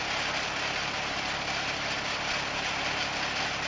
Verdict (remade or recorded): recorded